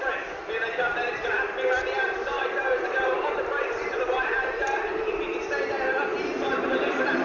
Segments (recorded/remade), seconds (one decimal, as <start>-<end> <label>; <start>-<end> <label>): 0.0-0.9 recorded; 0.9-5.2 remade; 5.2-6.1 recorded; 6.1-7.2 remade